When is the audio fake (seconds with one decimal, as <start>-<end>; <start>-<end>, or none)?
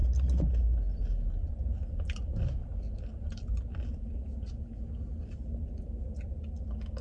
0.0-1.0